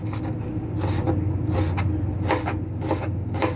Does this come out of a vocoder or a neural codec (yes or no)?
no